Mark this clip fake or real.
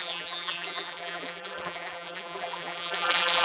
fake